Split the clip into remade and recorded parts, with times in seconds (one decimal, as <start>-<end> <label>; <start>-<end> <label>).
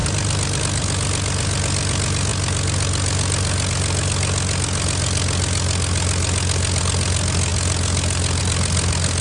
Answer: 0.0-9.2 recorded